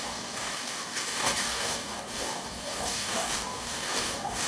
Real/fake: fake